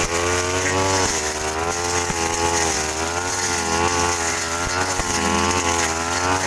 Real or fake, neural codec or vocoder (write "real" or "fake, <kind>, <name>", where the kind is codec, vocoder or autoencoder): real